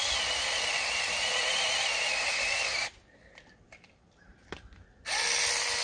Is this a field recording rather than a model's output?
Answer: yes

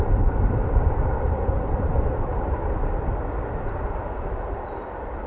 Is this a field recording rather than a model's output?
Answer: yes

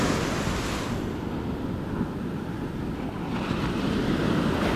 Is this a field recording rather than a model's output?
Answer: yes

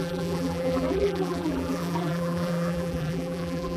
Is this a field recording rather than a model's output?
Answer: no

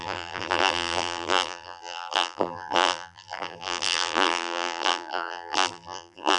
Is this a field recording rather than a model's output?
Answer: no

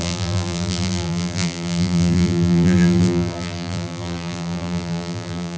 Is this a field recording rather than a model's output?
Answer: no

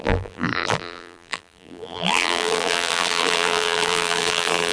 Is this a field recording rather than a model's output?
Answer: no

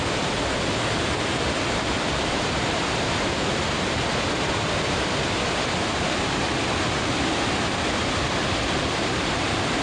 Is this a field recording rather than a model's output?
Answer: no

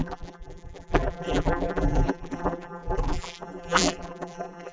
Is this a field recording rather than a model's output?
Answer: no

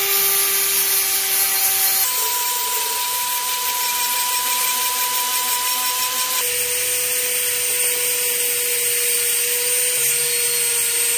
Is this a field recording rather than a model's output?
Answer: yes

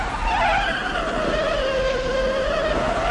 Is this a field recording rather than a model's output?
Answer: yes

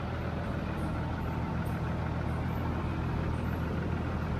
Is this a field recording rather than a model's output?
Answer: yes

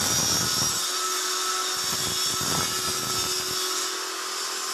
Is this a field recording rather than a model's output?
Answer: yes